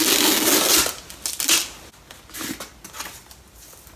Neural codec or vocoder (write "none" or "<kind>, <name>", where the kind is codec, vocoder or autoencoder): none